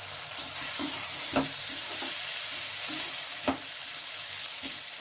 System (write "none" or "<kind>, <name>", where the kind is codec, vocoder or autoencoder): vocoder, BigVGAN v2